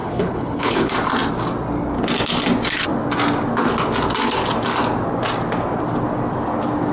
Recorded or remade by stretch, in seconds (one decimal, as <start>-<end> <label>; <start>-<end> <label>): 0.0-0.9 remade; 0.9-6.9 recorded